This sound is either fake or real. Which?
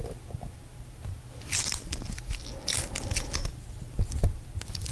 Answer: real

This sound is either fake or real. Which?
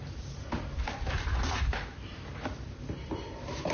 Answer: real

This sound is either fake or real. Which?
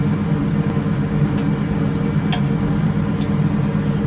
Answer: real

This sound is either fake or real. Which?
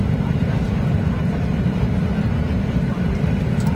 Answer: real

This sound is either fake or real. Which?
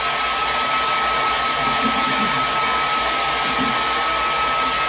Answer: real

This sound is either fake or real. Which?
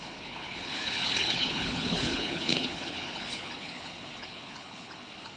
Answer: fake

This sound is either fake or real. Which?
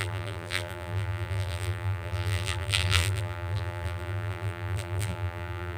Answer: fake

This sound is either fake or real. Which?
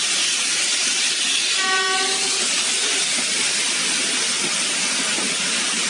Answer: real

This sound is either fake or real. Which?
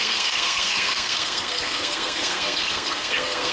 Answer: fake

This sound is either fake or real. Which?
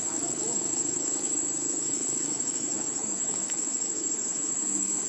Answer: fake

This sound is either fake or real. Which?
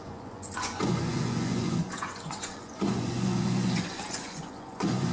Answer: fake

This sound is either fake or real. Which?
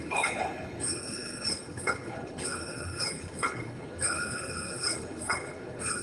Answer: fake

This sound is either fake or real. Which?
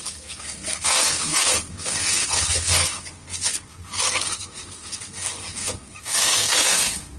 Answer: fake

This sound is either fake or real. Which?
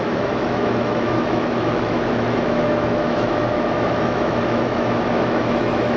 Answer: fake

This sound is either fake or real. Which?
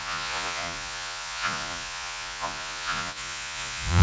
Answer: fake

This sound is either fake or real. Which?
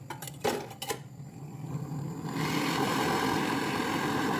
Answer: fake